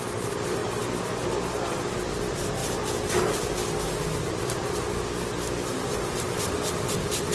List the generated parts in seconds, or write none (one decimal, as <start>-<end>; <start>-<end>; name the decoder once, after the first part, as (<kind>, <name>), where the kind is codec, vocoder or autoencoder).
none